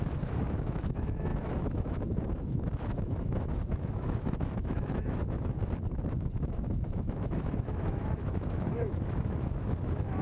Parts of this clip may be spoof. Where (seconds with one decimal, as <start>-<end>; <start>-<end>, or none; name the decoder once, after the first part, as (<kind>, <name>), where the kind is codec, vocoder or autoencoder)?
0.0-5.6 (autoencoder, DAC-VAE); 6.2-10.2